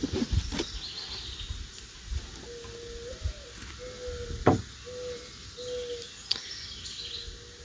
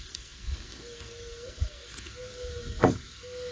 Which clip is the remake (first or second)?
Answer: second